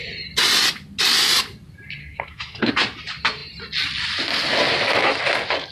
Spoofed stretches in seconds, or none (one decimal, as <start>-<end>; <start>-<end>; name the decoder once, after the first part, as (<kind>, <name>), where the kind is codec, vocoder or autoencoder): 2.0-2.7 (codec, SNAC)